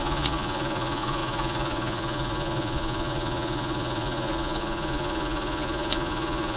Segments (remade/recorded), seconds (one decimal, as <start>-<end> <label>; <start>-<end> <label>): 0.0-6.6 remade